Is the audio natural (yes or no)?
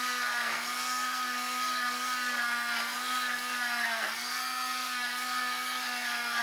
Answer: no